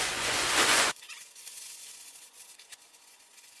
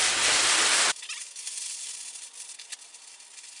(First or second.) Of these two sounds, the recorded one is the second